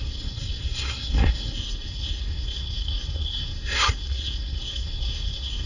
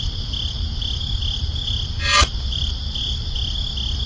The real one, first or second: second